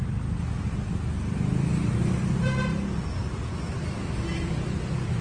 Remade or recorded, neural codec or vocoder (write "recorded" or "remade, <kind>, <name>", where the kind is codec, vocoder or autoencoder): recorded